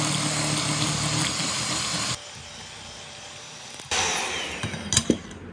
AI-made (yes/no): no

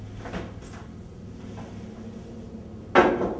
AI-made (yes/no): no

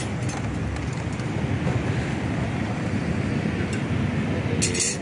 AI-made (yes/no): no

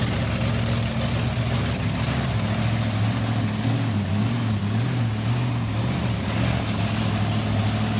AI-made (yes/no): no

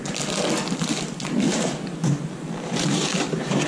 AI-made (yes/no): no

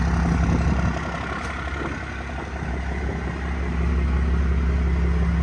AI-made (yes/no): no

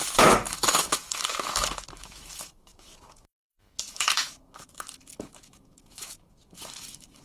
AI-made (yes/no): yes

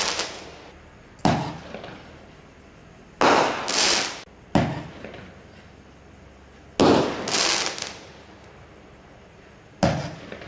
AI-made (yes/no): no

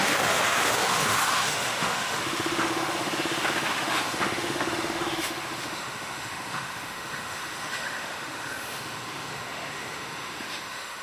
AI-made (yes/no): yes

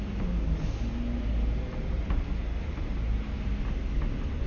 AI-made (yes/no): no